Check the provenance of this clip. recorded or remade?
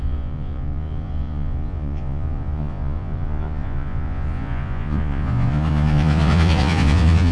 remade